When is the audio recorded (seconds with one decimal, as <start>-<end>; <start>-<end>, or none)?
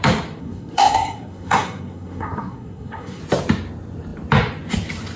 0.0-0.4; 3.2-5.2